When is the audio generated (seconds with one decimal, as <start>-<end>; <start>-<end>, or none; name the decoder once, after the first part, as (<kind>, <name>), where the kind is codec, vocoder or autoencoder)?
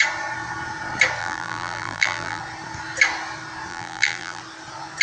1.2-2.4 (vocoder, BigVGAN v2); 3.7-4.4